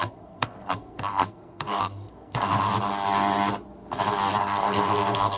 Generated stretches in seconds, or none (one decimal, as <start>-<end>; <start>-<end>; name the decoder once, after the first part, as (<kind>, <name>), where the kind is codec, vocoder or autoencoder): 0.0-2.7 (codec, SNAC); 4.4-5.4